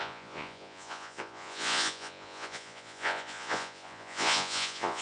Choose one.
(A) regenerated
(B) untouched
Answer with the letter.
A